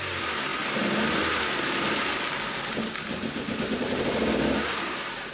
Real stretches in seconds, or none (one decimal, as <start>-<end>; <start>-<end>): 0.0-5.3